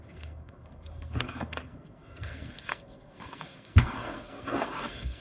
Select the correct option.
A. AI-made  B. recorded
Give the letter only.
A